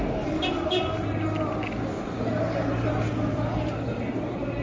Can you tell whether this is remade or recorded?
recorded